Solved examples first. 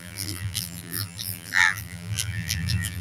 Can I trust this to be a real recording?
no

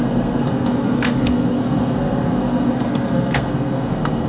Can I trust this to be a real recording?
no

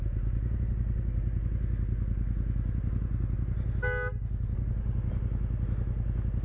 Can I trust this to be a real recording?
yes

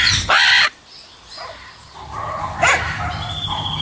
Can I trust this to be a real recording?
yes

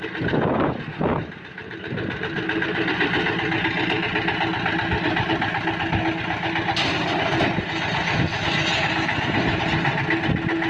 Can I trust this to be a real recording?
yes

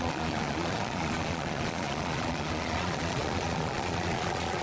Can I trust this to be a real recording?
no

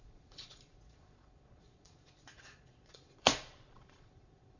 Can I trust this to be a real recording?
no